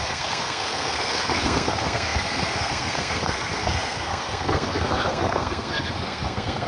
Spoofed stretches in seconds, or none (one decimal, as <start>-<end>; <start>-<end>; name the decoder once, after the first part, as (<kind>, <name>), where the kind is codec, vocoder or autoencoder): 0.0-6.7 (codec, SNAC)